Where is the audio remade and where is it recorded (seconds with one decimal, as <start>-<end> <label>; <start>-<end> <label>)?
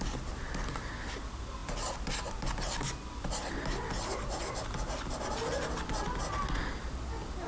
0.0-7.5 recorded